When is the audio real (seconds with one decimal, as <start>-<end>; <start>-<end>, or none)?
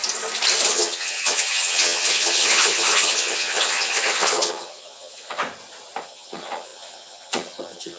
0.0-0.7; 5.4-6.0